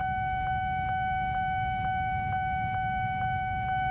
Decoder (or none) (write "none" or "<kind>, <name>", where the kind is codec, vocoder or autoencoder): none